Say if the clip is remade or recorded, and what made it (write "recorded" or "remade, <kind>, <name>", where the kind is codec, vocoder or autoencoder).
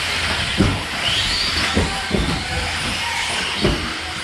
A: recorded